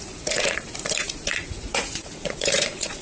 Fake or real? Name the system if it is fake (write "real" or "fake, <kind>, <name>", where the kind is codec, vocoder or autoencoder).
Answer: fake, vocoder, Vocos